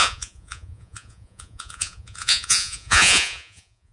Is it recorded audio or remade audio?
remade